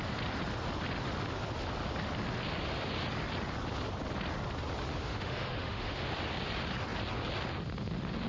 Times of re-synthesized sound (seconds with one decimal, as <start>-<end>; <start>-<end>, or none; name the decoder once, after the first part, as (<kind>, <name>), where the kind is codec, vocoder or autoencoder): 4.9-6.1 (autoencoder, DAC-VAE)